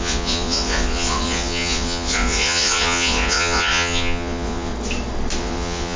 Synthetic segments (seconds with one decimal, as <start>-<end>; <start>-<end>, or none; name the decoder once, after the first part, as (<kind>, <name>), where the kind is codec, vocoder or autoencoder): 0.0-4.7 (vocoder, Vocos); 5.4-6.0